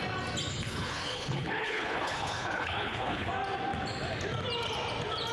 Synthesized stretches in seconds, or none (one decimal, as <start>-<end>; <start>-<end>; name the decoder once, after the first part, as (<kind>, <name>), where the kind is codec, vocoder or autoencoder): 0.5-3.3 (codec, HILCodec)